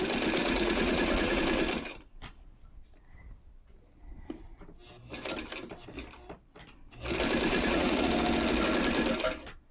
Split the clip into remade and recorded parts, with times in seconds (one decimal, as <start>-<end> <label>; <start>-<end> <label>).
0.0-0.4 recorded; 0.4-1.4 remade; 1.4-7.5 recorded; 7.5-8.1 remade; 8.1-9.7 recorded